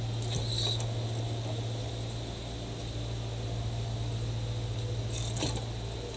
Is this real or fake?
real